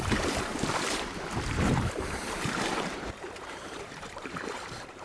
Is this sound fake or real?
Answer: fake